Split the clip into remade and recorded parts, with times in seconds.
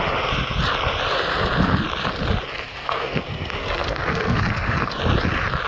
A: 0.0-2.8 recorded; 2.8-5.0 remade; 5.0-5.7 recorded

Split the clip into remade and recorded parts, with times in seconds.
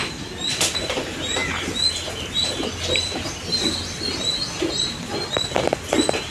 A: 0.0-6.3 recorded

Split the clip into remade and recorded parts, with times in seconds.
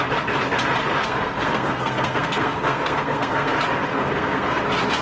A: 0.0-1.0 recorded; 1.0-3.5 remade; 3.5-3.9 recorded; 3.9-4.6 remade; 4.6-5.0 recorded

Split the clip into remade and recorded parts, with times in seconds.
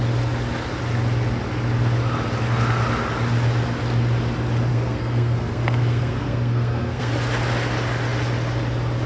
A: 0.0-4.7 recorded; 4.7-7.1 remade; 7.1-9.1 recorded